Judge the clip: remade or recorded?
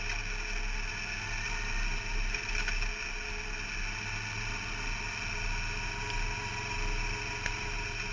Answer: recorded